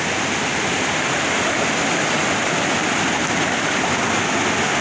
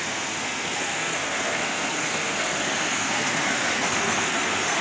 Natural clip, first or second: first